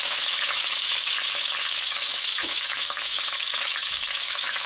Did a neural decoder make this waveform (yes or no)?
yes